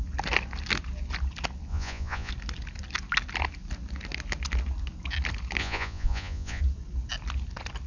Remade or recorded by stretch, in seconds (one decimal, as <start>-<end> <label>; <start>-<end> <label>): 0.0-1.7 recorded; 1.7-2.3 remade; 2.3-5.6 recorded; 5.6-6.6 remade; 6.6-7.9 recorded